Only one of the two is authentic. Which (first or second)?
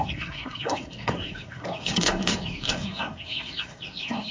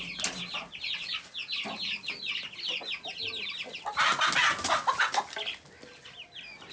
second